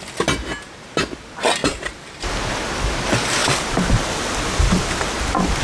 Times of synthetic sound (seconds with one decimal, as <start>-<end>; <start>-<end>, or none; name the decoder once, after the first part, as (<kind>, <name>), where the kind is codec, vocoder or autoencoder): 1.6-2.2 (vocoder, BigVGAN v2); 3.4-4.0